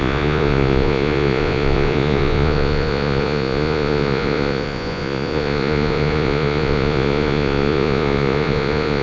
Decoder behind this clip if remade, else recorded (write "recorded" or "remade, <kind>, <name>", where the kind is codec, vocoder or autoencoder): remade, vocoder, Vocos